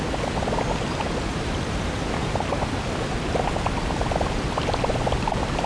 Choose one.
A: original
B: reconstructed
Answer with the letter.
A